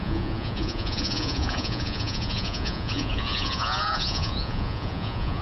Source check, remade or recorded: remade